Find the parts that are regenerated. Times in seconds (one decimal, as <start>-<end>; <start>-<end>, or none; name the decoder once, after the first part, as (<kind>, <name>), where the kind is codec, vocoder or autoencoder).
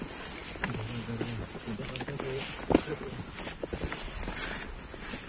none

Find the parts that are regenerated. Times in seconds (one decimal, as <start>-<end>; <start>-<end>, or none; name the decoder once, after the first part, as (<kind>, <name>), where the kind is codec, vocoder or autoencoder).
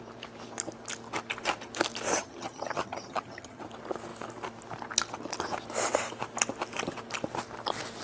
2.1-3.6 (vocoder, HiFi-GAN)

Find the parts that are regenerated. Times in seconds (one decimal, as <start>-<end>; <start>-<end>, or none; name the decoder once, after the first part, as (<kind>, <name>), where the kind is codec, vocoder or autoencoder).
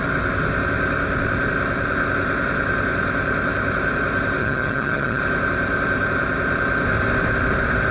4.4-5.2 (vocoder, HiFi-GAN)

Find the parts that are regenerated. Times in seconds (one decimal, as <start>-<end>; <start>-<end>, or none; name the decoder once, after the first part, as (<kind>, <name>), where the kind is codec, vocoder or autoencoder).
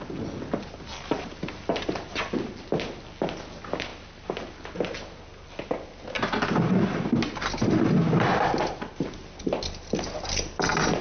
none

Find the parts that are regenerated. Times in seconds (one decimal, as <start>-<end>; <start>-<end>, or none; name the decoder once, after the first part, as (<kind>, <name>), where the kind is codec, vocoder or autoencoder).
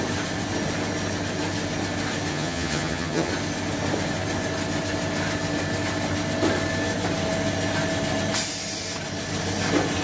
2.3-3.3 (vocoder, HiFi-GAN)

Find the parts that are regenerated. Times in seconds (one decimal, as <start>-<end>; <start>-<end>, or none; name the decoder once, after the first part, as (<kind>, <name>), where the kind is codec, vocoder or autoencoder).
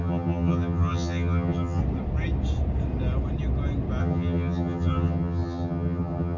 0.0-1.8 (vocoder, HiFi-GAN); 4.0-6.4